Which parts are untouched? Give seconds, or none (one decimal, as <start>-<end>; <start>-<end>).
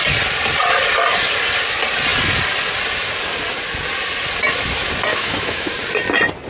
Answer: 0.0-5.1; 5.7-6.5